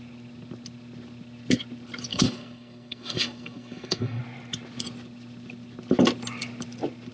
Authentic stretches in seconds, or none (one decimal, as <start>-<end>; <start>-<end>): 0.0-2.1; 4.2-7.1